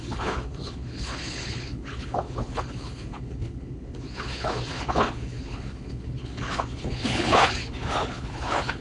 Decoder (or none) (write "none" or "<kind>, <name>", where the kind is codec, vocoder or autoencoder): codec, HILCodec